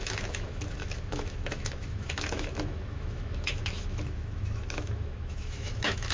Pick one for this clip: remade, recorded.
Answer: remade